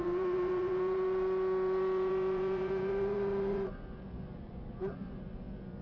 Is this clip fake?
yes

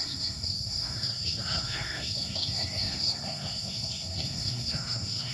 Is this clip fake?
yes